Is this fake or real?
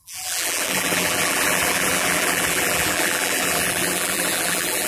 fake